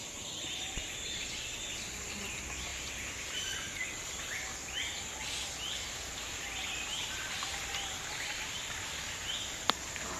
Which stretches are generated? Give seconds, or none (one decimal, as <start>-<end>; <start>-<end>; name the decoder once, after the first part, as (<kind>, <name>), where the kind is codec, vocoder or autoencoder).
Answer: none